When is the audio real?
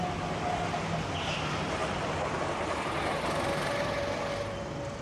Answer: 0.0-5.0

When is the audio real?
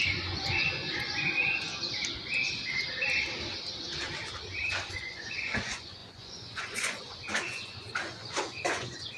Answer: 1.7-4.9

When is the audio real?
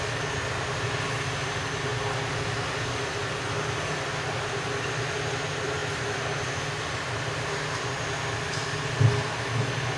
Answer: 0.0-10.0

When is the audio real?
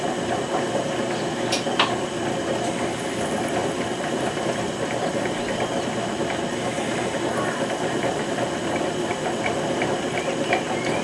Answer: 0.0-3.6; 4.6-11.0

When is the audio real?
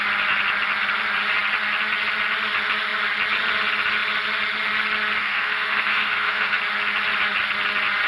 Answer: 0.0-5.2; 6.6-8.1